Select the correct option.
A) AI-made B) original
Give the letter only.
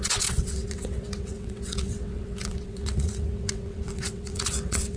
A